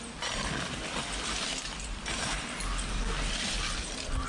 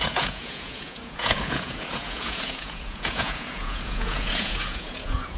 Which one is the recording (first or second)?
first